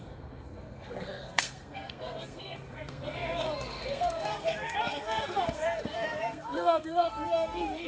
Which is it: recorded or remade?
remade